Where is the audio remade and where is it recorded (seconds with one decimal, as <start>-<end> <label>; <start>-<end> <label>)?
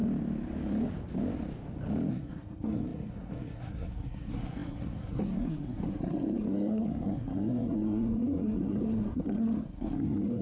0.0-2.1 recorded; 2.1-10.4 remade